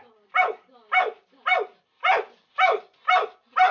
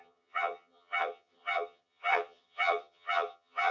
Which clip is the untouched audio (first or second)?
first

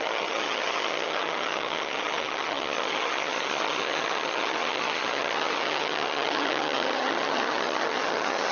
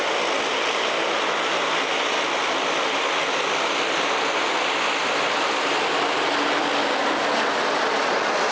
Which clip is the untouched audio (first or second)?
second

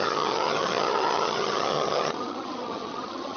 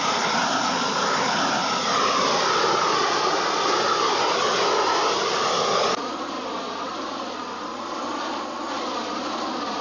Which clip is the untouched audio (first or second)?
second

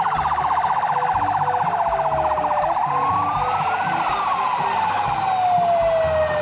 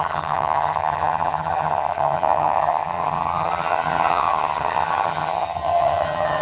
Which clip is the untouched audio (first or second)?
first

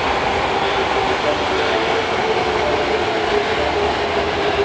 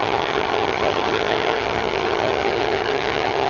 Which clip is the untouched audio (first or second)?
first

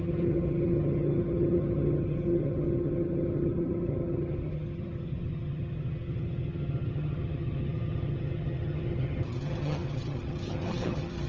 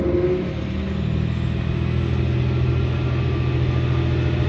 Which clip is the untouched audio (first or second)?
second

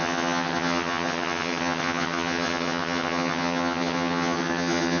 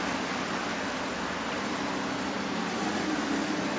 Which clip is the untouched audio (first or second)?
second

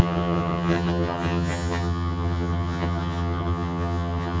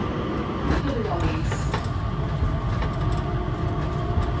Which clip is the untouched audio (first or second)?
second